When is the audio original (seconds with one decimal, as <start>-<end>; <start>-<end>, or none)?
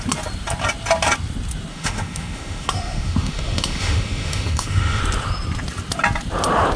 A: 0.0-1.7; 5.0-6.8